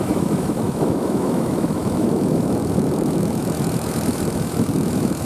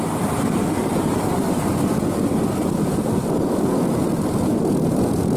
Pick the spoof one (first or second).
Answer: first